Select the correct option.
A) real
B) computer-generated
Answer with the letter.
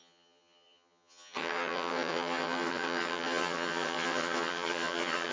B